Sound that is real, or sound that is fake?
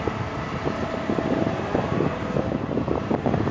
fake